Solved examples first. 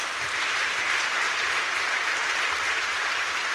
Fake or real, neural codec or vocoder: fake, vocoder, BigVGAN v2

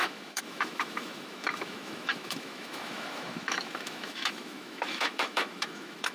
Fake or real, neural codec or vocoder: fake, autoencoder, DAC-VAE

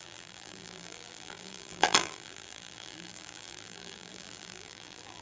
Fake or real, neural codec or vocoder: fake, vocoder, BigVGAN v2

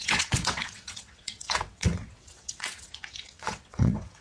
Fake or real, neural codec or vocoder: fake, vocoder, WaveNeXt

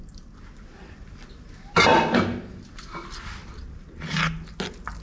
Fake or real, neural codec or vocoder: real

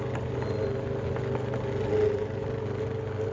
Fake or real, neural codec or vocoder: real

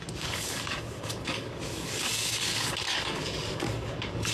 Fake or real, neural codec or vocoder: fake, codec, DAC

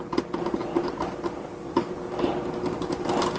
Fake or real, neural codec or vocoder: real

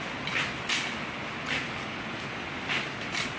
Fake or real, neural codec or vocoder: real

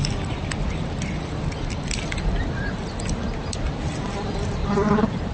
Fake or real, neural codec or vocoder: real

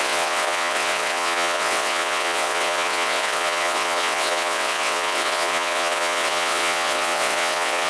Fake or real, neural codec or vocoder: fake, vocoder, WaveNeXt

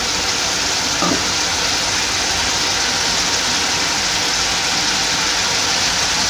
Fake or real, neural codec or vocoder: real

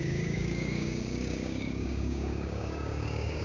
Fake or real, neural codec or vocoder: fake, codec, DAC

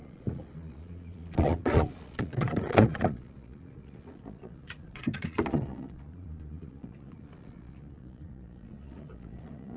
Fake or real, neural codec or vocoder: fake, vocoder, Vocos